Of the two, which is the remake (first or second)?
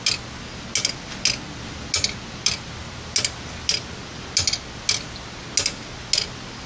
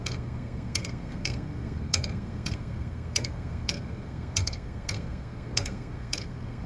second